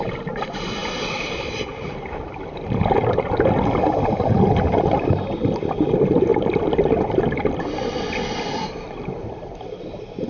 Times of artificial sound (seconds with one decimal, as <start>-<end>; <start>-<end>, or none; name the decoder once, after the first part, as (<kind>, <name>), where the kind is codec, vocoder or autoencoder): none